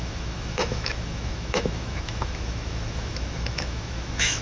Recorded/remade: remade